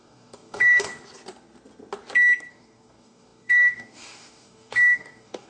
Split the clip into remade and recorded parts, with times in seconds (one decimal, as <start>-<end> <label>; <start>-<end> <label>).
0.0-0.9 remade; 0.9-2.5 recorded; 2.5-5.5 remade